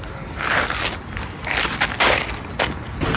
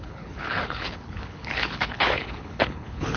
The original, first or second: first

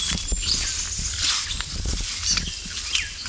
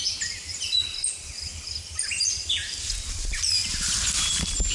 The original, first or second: first